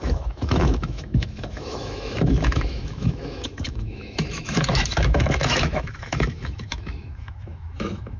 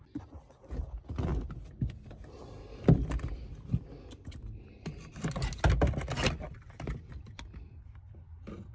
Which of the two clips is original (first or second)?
second